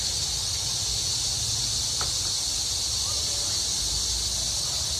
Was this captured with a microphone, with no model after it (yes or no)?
yes